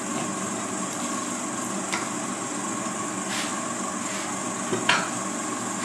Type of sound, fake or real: real